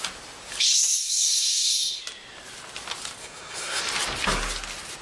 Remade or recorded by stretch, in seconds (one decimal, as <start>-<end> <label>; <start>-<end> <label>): 0.0-1.0 recorded; 1.0-2.0 remade; 2.0-3.2 recorded; 3.2-3.8 remade; 3.8-5.0 recorded